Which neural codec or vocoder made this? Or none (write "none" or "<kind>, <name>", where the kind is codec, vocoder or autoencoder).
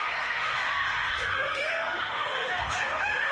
autoencoder, DAC-VAE